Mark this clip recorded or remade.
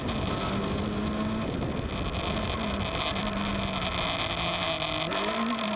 recorded